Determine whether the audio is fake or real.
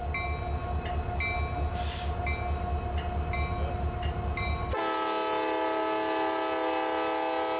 real